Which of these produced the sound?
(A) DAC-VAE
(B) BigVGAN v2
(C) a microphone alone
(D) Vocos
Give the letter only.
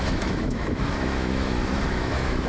A